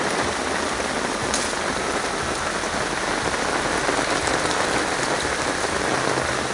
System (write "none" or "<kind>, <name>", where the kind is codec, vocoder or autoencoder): none